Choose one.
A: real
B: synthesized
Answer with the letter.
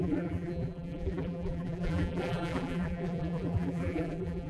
B